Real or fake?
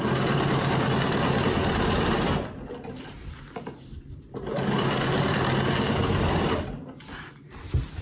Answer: fake